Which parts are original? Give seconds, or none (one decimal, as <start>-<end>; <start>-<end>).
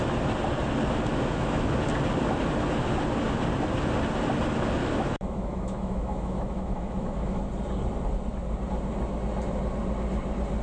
0.0-1.1; 1.7-4.8; 7.4-10.6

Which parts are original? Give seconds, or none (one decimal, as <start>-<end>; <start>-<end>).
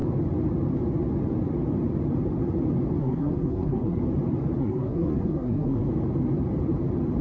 0.0-3.0; 4.0-4.6; 5.9-7.2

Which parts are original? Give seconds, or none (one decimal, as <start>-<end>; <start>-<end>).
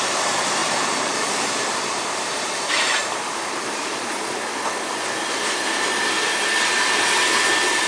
0.0-0.6; 4.1-7.9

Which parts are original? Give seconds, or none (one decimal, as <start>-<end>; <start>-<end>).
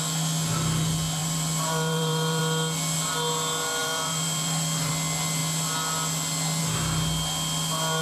0.0-1.2; 2.4-3.8; 4.9-8.0